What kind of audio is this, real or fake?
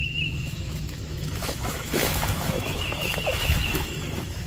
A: fake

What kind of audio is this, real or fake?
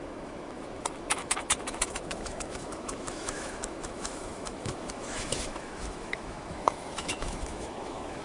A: fake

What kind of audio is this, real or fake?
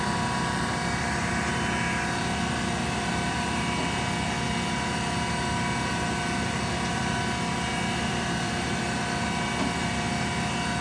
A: real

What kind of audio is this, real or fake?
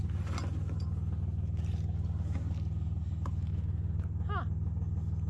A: real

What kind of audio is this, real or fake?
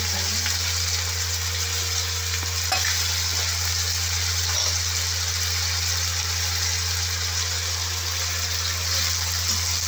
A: real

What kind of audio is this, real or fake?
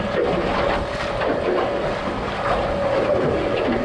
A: real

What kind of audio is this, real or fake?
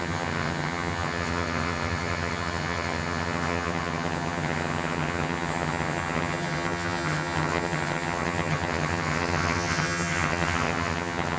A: fake